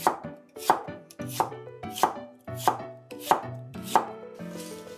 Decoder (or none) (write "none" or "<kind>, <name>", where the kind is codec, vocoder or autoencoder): vocoder, BigVGAN v2